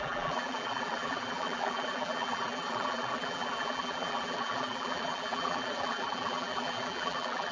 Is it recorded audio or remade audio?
remade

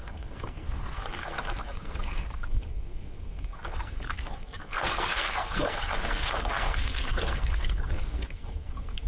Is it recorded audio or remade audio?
remade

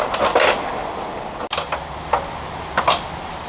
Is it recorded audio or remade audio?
recorded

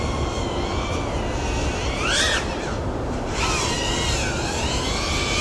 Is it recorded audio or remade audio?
recorded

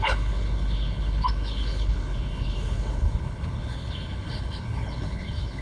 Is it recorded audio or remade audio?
remade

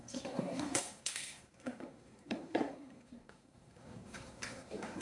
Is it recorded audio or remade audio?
remade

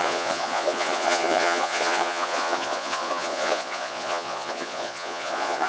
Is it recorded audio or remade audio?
remade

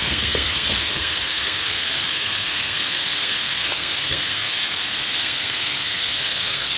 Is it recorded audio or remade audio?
remade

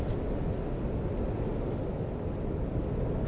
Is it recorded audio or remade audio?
recorded